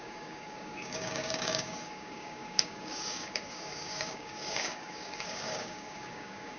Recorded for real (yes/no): no